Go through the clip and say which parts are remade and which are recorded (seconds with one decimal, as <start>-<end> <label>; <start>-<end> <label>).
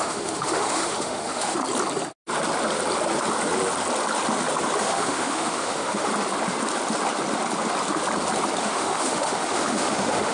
0.0-1.6 remade; 1.6-4.8 recorded; 4.8-6.1 remade; 6.1-8.6 recorded; 8.6-10.3 remade